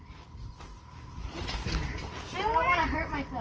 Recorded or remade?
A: recorded